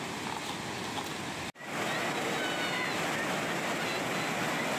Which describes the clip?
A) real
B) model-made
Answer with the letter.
A